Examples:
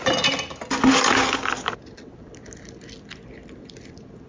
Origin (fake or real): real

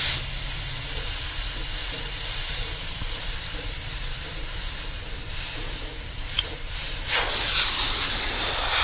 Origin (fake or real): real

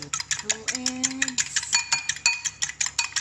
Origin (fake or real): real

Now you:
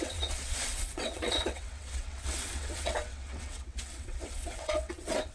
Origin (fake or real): fake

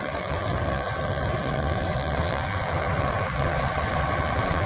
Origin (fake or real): fake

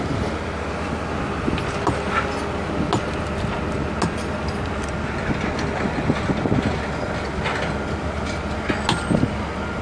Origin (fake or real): real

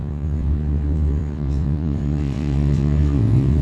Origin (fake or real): fake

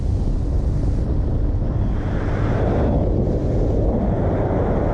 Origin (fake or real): real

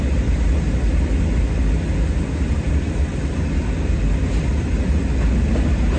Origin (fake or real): real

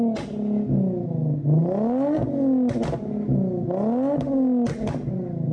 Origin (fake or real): real